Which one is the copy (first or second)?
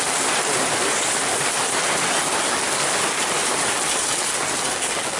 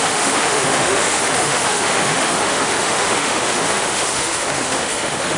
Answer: second